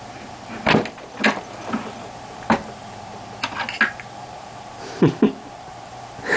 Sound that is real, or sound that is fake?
real